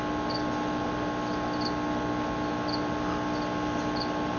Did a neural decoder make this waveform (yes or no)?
no